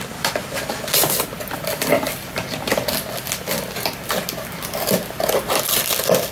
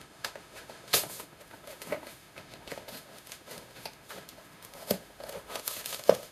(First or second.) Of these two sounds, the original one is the first